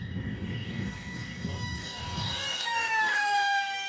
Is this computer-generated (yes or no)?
yes